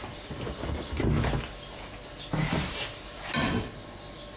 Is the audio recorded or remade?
recorded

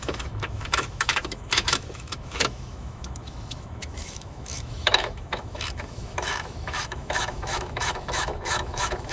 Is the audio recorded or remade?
remade